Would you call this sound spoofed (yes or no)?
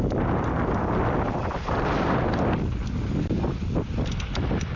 no